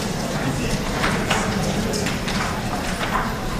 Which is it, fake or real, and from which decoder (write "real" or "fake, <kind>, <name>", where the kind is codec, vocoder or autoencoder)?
fake, vocoder, BigVGAN v2